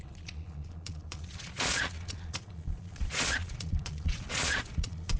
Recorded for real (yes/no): no